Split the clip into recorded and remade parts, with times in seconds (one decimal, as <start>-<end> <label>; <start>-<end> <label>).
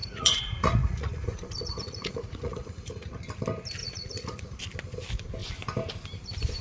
0.0-3.2 remade; 3.2-3.8 recorded; 3.8-4.6 remade; 4.6-6.6 recorded